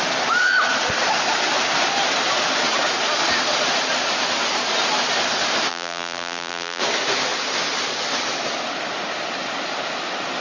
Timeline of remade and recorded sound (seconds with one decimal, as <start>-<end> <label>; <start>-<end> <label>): 0.0-5.7 recorded; 5.7-6.8 remade; 6.8-10.4 recorded

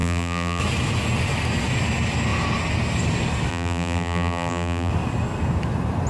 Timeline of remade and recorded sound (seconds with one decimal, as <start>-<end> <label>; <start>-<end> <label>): 0.0-0.6 remade; 0.6-3.5 recorded; 3.5-4.9 remade; 4.9-6.1 recorded

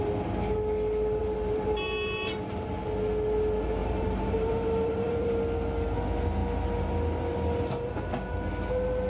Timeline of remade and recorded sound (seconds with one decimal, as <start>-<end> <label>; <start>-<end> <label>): 0.0-1.2 recorded; 1.2-2.7 remade; 2.7-3.8 recorded; 3.8-5.3 remade; 5.3-9.1 recorded